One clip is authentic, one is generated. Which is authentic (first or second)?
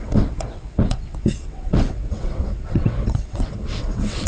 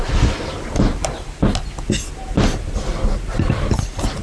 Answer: second